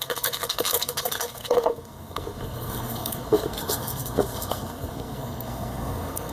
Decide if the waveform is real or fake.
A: fake